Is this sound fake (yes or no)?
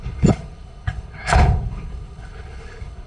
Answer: yes